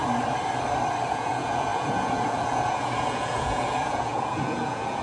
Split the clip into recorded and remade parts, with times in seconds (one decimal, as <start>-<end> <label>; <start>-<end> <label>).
0.0-1.1 recorded; 1.1-5.0 remade